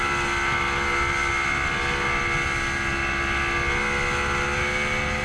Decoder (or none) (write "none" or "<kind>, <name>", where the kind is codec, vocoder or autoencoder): none